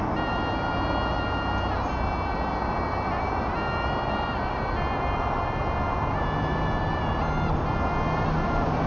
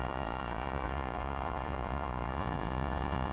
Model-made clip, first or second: second